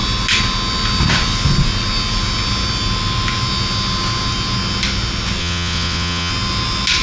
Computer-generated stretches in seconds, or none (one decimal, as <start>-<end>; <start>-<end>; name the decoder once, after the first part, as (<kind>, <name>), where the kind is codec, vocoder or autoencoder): 5.4-6.3 (vocoder, WaveNeXt)